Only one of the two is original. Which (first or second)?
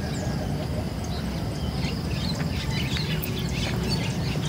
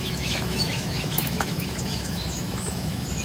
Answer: first